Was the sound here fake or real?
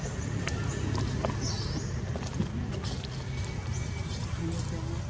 real